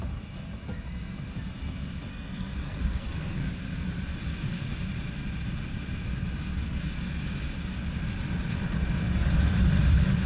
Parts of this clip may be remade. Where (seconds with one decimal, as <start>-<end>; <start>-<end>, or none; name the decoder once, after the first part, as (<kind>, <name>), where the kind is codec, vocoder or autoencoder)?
2.1-3.5 (codec, SNAC)